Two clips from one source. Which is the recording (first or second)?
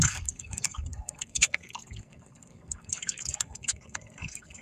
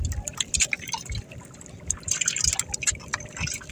second